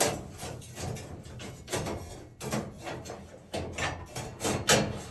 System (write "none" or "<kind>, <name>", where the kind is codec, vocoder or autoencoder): none